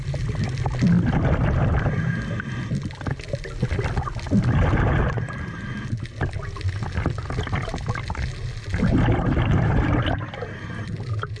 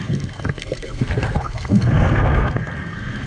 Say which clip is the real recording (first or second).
first